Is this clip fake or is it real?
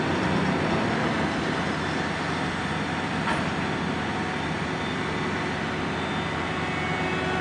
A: real